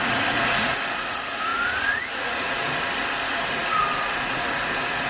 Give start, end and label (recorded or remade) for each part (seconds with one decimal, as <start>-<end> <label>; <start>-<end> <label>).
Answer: 0.0-2.6 remade; 2.6-3.2 recorded; 3.2-5.1 remade